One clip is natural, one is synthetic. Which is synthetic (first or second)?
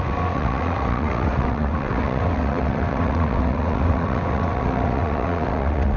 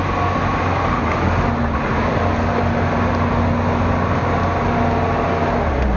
first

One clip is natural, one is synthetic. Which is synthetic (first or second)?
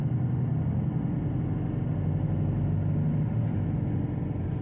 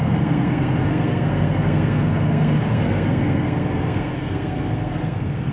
second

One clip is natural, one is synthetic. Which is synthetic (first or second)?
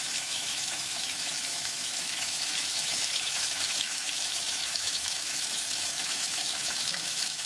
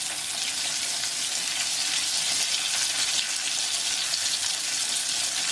first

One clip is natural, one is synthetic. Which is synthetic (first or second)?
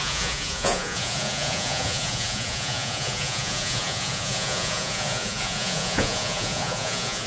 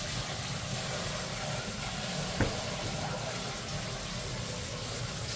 first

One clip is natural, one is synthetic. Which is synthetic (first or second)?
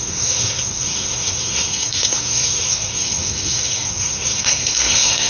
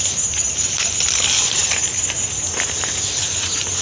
first